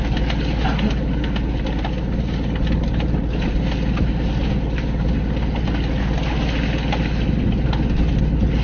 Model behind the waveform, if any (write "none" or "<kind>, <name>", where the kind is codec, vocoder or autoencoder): none